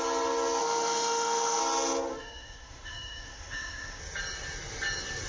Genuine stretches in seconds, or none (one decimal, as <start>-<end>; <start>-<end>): 0.0-0.6; 1.6-2.1; 4.0-5.3